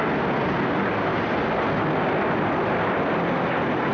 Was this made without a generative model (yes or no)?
yes